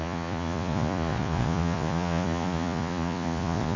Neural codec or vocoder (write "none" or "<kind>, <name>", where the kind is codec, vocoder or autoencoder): vocoder, Vocos